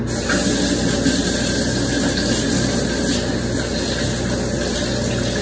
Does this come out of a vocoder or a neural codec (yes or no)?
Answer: no